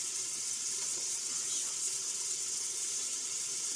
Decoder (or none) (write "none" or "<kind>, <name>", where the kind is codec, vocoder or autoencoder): vocoder, WaveNeXt